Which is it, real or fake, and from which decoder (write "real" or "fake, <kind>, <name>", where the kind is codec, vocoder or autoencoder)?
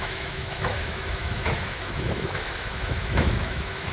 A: fake, autoencoder, DAC-VAE